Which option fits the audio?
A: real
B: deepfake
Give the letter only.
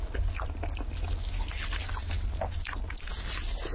A